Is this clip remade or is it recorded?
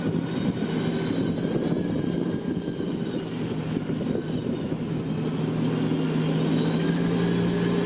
recorded